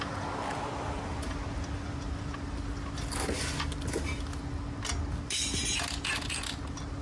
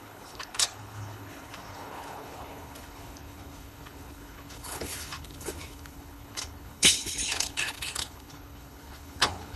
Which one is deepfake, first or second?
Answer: second